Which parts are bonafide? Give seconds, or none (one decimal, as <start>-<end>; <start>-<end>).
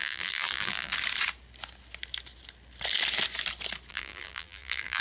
0.9-3.9